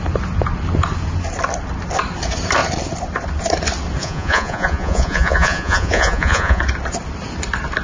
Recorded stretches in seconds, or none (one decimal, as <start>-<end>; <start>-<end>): 0.0-4.0; 6.6-7.8